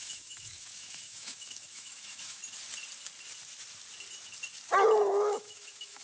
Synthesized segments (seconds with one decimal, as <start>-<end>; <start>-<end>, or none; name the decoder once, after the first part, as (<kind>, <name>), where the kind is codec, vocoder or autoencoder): 0.0-2.4 (autoencoder, DAC-VAE); 5.1-6.0